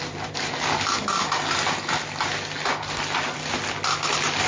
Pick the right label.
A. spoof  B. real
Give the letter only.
B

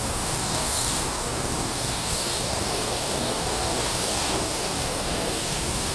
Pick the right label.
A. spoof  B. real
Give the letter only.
A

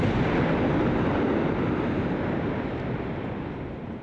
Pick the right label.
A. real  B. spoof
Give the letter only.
A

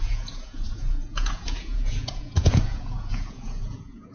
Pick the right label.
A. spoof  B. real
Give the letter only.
A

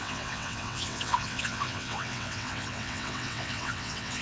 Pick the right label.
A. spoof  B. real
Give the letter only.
A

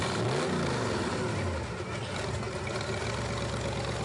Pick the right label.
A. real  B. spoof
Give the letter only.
A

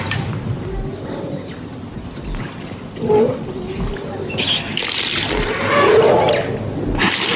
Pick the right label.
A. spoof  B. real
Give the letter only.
B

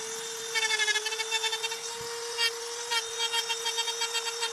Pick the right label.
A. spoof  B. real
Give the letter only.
B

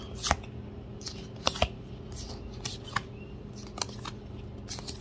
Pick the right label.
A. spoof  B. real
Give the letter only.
B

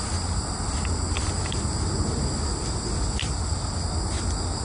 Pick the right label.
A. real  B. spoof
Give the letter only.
A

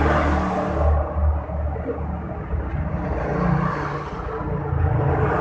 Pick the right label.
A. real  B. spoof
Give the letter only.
A